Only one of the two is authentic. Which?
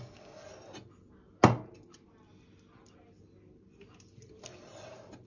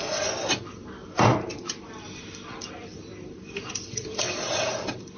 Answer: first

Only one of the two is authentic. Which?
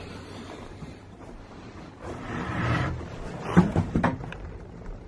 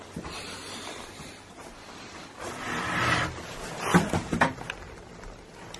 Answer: second